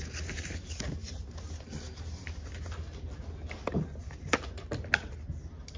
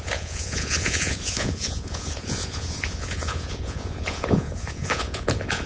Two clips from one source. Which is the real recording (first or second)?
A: first